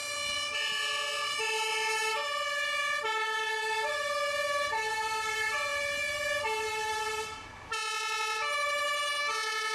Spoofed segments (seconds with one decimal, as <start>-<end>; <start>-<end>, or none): none